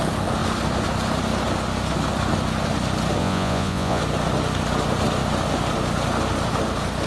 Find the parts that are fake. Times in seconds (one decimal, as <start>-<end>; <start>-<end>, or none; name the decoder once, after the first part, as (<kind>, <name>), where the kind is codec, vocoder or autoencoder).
3.2-4.0 (vocoder, Vocos)